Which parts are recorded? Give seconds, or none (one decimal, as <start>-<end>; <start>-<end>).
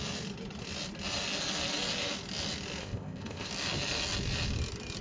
0.0-2.8; 3.5-5.0